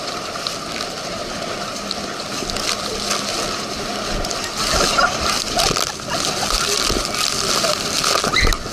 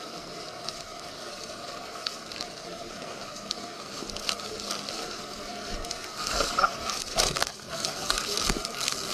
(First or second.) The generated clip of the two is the second